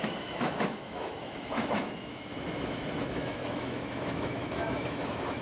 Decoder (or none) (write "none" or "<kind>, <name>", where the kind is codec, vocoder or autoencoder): autoencoder, DAC-VAE